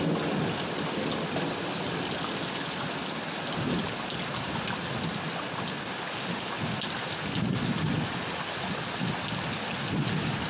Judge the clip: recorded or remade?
recorded